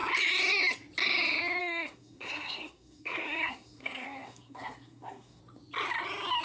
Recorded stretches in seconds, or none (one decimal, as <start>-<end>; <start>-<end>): 0.0-1.6; 5.4-6.4